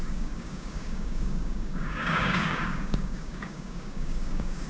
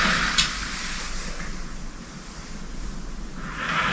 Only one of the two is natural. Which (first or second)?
second